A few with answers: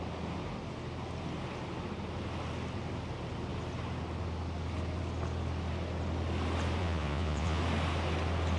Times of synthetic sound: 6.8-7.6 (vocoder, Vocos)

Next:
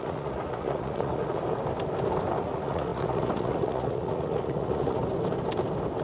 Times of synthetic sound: 0.0-1.4 (vocoder, Vocos); 2.4-5.0

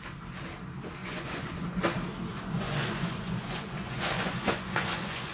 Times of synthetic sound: 1.0-1.8 (vocoder, Vocos); 2.3-5.3

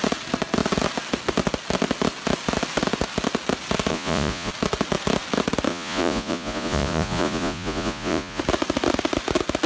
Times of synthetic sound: 3.9-4.5 (vocoder, Vocos); 5.7-8.4

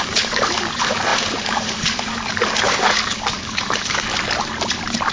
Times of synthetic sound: 0.0-4.1 (codec, DAC)

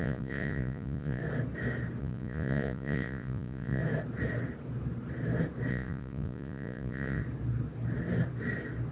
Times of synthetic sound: 0.0-1.2 (vocoder, Vocos); 2.0-3.8; 5.7-7.2

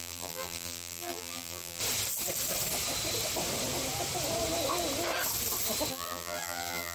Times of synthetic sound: 0.0-1.8 (vocoder, BigVGAN v2); 5.9-6.9